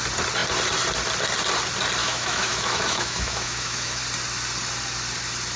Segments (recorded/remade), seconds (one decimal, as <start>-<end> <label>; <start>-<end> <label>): 0.0-2.0 recorded; 2.0-4.0 remade; 4.0-5.6 recorded